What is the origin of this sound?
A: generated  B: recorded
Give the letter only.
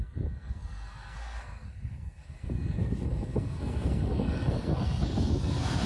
A